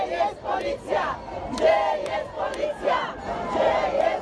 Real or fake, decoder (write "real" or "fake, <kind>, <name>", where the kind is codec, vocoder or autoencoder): real